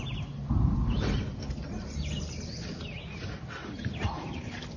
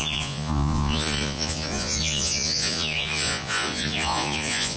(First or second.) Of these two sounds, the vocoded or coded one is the second